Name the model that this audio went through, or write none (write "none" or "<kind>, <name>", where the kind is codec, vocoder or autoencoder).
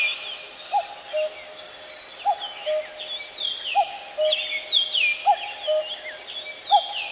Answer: none